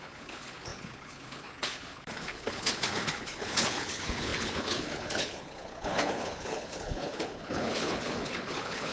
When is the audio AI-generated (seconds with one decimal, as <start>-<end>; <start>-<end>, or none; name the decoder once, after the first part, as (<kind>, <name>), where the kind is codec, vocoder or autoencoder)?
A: 0.0-8.9 (codec, HILCodec)

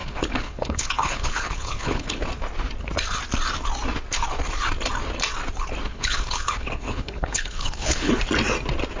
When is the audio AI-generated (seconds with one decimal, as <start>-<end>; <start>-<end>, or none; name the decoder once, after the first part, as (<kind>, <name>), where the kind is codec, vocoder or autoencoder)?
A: 0.0-2.2 (codec, HILCodec); 5.9-8.1